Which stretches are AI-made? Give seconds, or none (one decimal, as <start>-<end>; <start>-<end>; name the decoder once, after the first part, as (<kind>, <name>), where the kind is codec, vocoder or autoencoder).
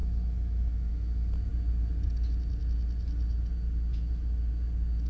0.0-0.9 (autoencoder, DAC-VAE)